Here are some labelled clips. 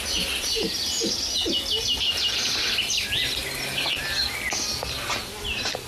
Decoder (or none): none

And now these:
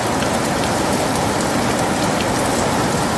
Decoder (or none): none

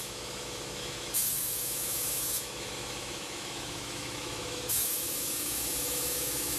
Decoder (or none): autoencoder, DAC-VAE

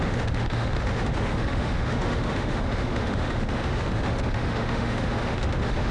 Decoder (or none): autoencoder, DAC-VAE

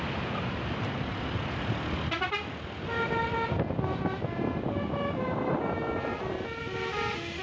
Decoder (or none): none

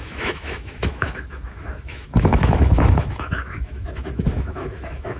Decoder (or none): autoencoder, DAC-VAE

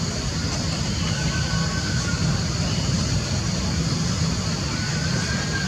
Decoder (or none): none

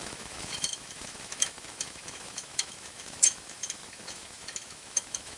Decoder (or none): autoencoder, DAC-VAE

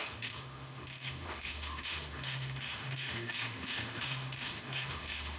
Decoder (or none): autoencoder, DAC-VAE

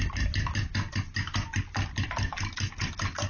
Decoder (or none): none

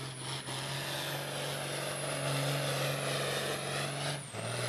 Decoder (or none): none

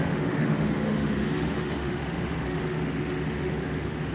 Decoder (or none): autoencoder, DAC-VAE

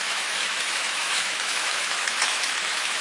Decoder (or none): autoencoder, DAC-VAE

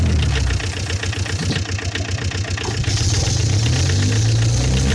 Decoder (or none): none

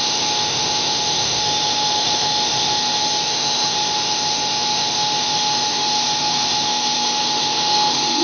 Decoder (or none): autoencoder, DAC-VAE